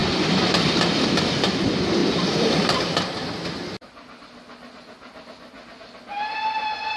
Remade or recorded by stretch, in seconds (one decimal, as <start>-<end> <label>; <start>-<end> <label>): 0.0-7.0 recorded